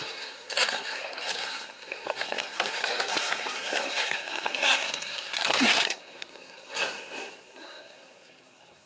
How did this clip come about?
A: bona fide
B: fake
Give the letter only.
B